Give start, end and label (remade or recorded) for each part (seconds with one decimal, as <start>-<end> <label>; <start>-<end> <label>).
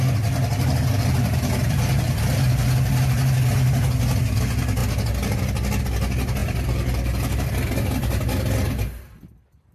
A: 0.0-0.9 recorded; 0.9-2.6 remade; 2.6-6.4 recorded; 6.4-7.5 remade; 7.5-9.7 recorded